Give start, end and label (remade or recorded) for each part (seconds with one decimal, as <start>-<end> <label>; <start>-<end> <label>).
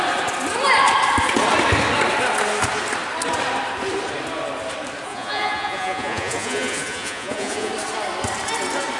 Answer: 0.0-5.1 recorded; 5.1-7.7 remade; 7.7-9.0 recorded